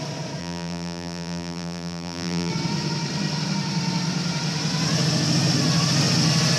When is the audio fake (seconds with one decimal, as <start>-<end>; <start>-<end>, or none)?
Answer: 0.4-2.5